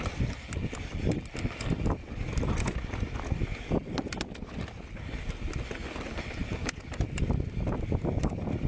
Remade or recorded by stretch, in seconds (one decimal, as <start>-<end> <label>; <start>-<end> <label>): 0.0-8.7 recorded